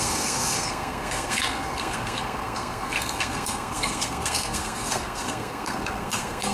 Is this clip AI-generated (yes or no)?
yes